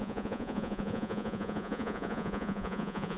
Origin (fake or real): fake